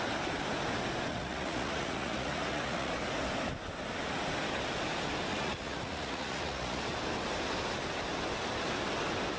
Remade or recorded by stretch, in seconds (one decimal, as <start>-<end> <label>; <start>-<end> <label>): 0.0-1.1 recorded; 1.1-2.9 remade; 2.9-5.3 recorded; 5.3-6.8 remade; 6.8-9.4 recorded